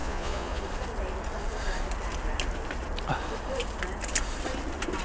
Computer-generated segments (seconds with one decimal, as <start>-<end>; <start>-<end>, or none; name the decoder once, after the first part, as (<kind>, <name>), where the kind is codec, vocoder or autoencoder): 0.0-0.6 (vocoder, Vocos)

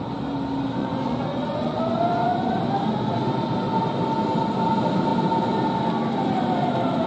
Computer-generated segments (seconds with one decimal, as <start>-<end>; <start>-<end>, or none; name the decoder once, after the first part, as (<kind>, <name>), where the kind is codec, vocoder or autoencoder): 0.8-1.8 (vocoder, Vocos)

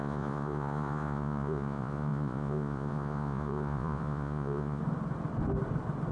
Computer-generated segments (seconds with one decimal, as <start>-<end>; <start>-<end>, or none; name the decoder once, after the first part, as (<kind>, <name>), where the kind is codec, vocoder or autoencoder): 0.0-4.8 (vocoder, Vocos)

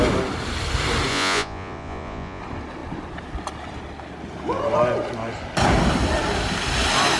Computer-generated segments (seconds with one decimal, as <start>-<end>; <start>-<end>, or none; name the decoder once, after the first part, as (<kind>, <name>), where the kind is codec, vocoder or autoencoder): 1.1-2.4 (vocoder, Vocos)

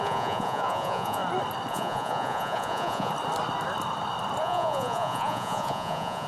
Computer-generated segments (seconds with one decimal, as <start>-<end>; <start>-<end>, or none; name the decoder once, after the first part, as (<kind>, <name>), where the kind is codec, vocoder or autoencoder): 0.0-1.2 (vocoder, Vocos); 1.7-3.1; 4.4-6.3